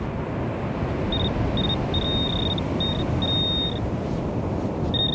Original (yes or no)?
yes